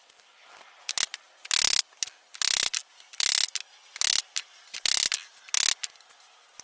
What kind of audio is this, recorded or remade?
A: recorded